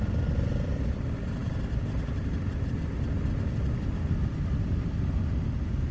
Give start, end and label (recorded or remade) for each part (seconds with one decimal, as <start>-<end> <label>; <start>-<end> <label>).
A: 0.0-5.9 recorded